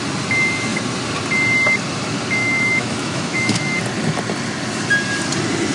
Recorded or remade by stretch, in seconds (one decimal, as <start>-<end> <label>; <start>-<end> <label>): 0.0-2.4 recorded; 2.4-3.8 remade; 3.8-5.7 recorded